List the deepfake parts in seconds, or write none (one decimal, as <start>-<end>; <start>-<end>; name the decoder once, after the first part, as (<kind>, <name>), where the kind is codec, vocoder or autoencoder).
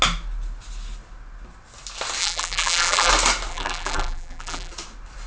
2.2-3.1 (vocoder, BigVGAN v2); 3.5-4.7